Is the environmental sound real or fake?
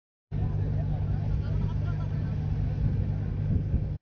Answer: real